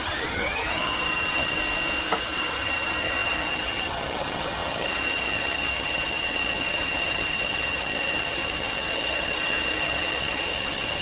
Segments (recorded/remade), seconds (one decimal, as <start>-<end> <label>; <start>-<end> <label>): 0.0-1.6 remade; 1.6-2.2 recorded; 2.2-11.0 remade